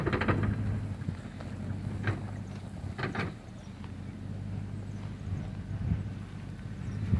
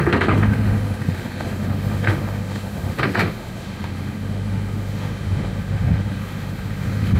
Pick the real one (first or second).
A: first